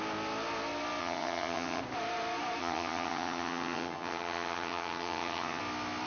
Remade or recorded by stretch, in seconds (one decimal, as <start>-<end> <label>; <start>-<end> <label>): 0.0-1.0 recorded; 1.0-1.8 remade; 1.8-2.6 recorded; 2.6-5.6 remade; 5.6-6.1 recorded